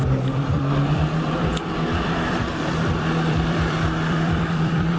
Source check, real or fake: fake